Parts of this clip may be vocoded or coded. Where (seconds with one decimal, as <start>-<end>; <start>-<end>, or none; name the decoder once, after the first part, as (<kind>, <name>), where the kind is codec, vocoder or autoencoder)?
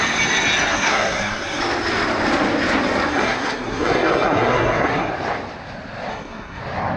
0.7-1.6 (codec, SNAC); 3.1-5.1; 6.1-6.6